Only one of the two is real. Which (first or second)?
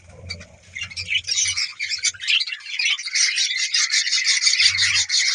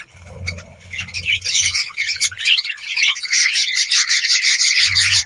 first